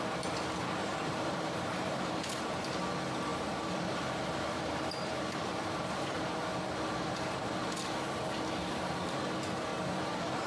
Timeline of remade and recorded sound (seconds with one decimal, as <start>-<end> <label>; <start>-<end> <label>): 0.0-0.8 recorded; 0.8-2.1 remade; 2.1-3.3 recorded; 3.3-6.3 remade; 6.3-9.7 recorded; 9.7-10.5 remade